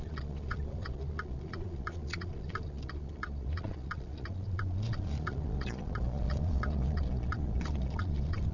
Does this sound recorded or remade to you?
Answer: remade